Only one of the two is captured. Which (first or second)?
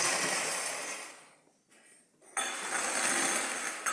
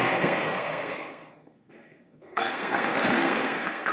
first